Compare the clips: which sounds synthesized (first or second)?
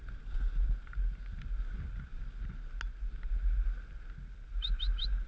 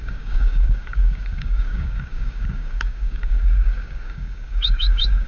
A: second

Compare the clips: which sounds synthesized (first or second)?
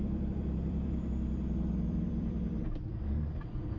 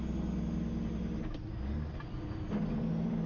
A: first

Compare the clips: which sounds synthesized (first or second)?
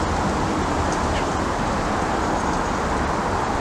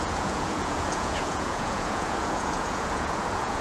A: second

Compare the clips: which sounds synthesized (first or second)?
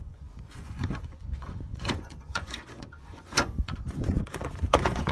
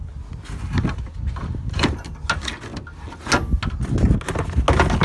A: first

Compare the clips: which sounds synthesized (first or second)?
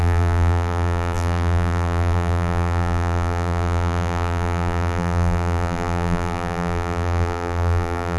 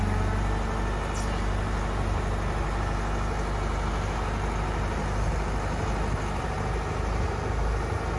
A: first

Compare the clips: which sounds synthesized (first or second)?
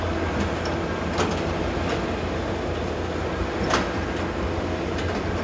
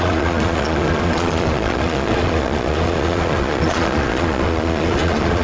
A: second